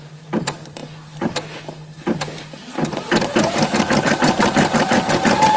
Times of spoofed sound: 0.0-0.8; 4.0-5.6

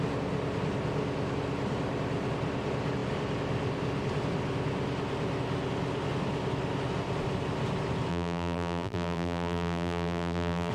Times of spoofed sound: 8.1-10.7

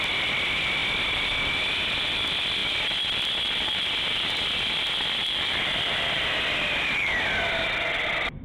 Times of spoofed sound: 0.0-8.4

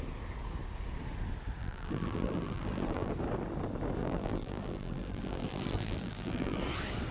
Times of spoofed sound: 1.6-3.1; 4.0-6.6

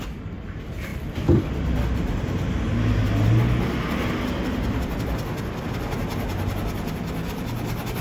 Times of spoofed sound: none

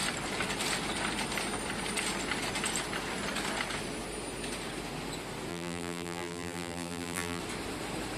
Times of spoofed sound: 5.5-7.4

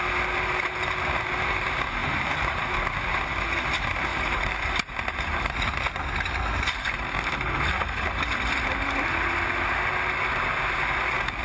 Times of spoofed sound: 2.0-2.7; 4.1-4.9